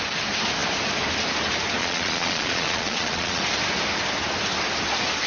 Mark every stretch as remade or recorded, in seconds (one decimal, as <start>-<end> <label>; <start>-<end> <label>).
0.0-1.8 recorded; 1.8-3.4 remade; 3.4-5.3 recorded